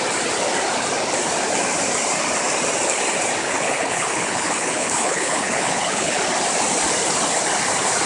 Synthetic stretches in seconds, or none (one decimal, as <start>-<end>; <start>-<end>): 3.4-6.2